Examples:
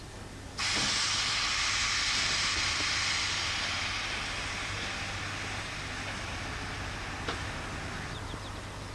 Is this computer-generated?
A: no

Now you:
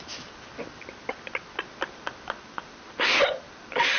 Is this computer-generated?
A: no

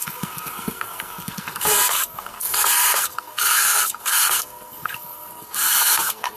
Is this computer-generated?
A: yes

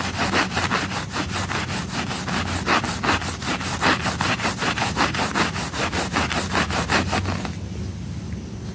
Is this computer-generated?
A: no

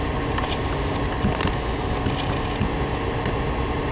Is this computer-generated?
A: no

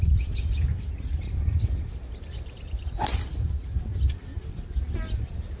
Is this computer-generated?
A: no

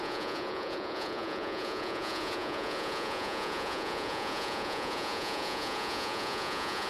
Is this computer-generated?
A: yes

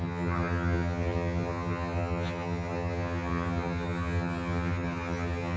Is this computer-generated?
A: yes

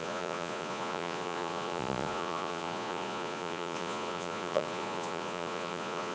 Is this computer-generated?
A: yes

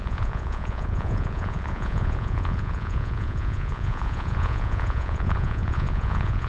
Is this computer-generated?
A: yes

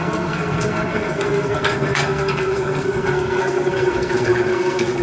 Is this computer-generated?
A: yes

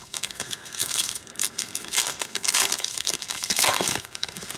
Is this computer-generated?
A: yes